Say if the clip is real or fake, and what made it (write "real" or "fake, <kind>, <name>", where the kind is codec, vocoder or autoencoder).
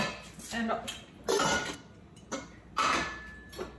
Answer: real